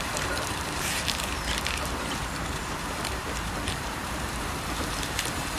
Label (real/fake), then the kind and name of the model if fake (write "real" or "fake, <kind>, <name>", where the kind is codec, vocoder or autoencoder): fake, vocoder, BigVGAN v2